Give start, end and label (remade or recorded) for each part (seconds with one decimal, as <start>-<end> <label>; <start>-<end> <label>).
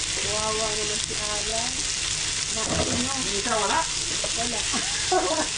0.0-4.7 recorded; 4.7-5.6 remade